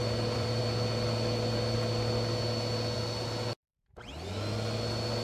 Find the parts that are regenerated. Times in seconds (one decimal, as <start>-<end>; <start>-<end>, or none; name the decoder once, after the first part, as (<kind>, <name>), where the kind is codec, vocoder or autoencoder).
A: 0.0-0.6 (vocoder, BigVGAN v2)